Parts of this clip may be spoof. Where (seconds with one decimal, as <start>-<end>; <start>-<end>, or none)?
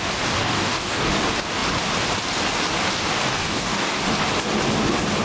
0.4-1.1; 3.2-4.0